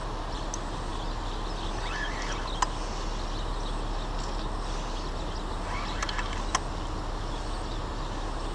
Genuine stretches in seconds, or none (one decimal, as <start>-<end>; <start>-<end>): 0.0-8.5